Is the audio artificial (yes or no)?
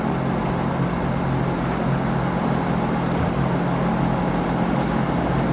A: no